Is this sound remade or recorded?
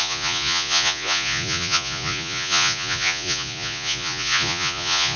remade